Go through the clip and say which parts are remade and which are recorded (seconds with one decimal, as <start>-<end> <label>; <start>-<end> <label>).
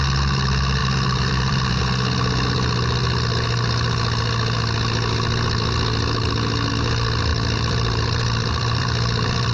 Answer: 0.0-0.8 recorded; 0.8-1.8 remade; 1.8-7.3 recorded; 7.3-9.5 remade